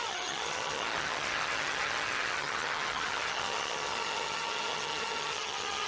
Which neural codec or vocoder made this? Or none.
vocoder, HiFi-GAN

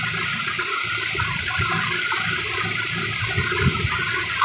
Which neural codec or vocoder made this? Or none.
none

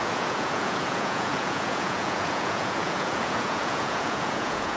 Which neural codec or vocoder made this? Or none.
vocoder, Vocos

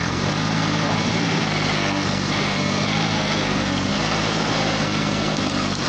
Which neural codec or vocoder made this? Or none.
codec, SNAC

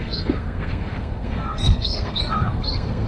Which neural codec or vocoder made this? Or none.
codec, SNAC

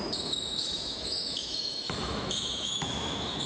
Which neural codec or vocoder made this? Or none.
autoencoder, DAC-VAE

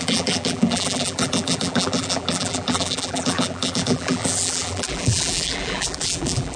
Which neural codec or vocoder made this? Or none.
vocoder, BigVGAN v2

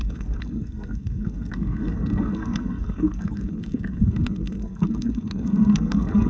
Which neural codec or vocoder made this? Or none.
codec, SNAC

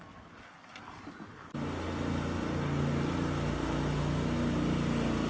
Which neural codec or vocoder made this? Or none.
none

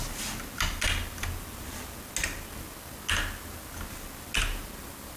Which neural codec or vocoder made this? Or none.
none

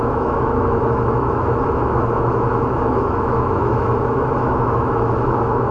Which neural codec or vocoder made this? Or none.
autoencoder, DAC-VAE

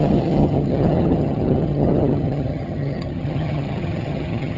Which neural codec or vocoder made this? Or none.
vocoder, HiFi-GAN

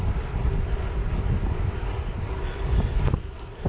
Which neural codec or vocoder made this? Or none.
none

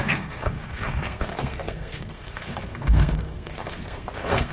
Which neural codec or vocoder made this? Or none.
codec, SNAC